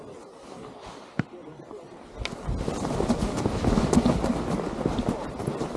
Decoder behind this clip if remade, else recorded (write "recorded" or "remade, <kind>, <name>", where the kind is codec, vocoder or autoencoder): recorded